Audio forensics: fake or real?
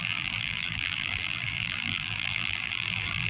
fake